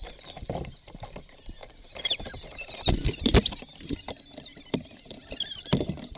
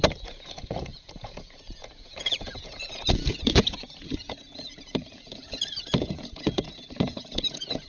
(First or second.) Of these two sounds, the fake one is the second